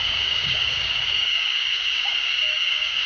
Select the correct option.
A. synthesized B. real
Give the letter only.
A